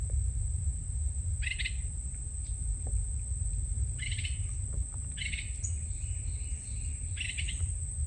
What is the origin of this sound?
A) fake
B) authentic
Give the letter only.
B